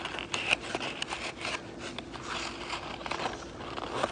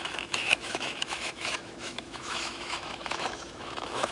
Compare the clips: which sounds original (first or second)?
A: first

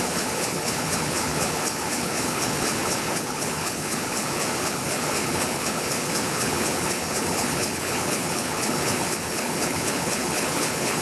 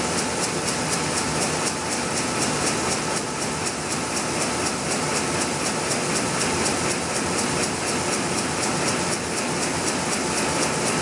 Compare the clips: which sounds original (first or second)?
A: second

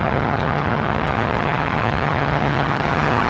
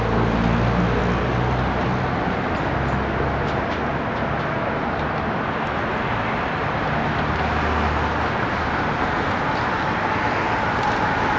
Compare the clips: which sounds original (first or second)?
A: second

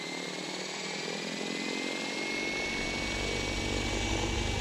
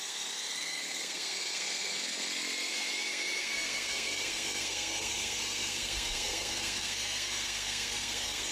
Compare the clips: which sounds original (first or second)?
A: first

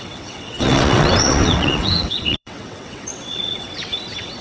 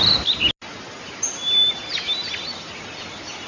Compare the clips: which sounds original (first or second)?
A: second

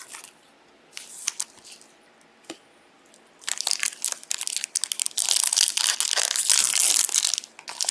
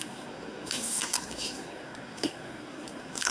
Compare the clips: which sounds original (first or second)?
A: first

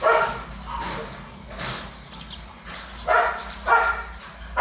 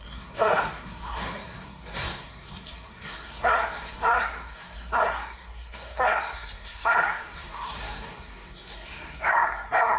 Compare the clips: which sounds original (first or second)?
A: first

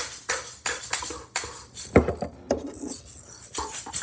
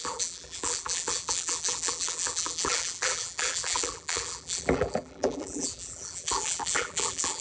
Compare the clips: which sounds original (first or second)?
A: first